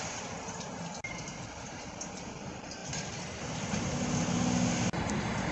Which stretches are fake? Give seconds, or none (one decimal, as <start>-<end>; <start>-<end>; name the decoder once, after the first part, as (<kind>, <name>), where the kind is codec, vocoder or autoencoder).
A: 1.0-2.3 (vocoder, BigVGAN v2); 2.8-3.9